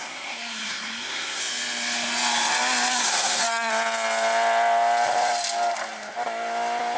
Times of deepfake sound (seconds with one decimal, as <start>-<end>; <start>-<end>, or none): 0.0-1.4; 2.9-3.7